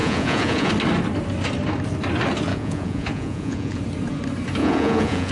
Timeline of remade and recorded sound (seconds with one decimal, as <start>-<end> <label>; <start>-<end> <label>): 0.0-0.7 remade; 0.7-2.5 recorded; 2.5-3.8 remade; 3.8-4.6 recorded; 4.6-5.3 remade